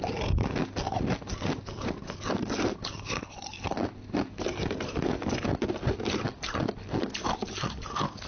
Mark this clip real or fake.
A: real